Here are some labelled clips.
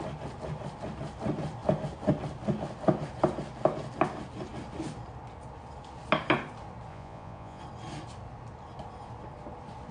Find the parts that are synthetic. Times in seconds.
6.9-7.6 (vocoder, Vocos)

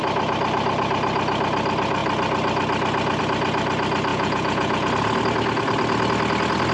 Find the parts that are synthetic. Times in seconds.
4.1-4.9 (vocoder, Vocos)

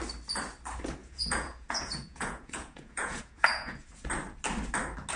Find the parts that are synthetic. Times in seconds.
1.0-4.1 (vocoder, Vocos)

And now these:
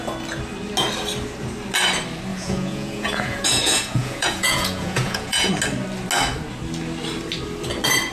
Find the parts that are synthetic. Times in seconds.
2.3-5.5 (vocoder, Vocos)

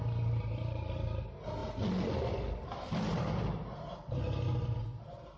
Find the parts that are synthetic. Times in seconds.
none